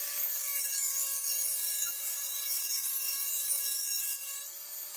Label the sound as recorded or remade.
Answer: remade